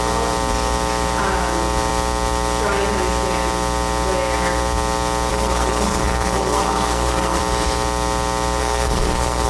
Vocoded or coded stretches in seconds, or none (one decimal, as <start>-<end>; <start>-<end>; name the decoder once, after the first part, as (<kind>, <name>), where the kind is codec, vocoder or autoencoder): 5.3-7.4 (codec, SNAC); 8.6-9.5